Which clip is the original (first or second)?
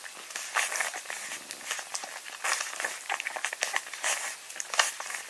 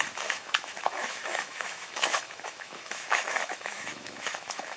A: first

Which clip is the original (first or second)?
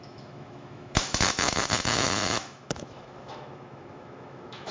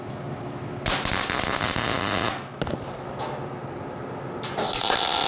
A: second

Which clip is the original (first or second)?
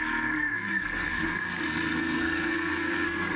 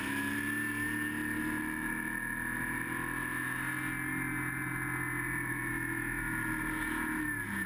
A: second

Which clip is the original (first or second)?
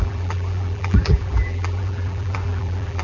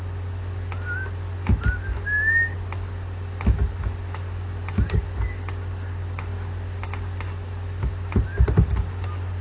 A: second